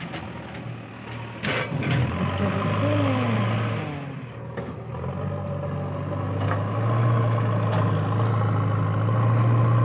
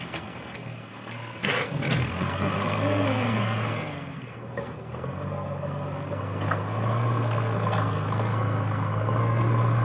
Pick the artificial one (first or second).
second